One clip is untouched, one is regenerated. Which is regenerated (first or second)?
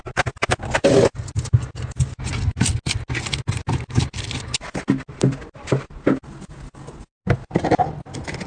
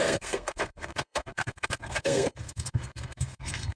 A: second